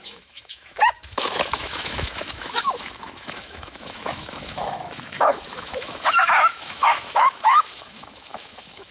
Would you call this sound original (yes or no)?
no